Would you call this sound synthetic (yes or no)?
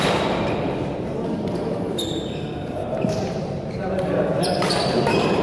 yes